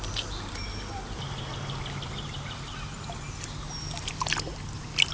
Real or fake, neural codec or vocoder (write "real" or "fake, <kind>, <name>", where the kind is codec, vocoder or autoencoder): real